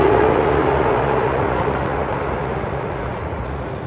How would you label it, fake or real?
fake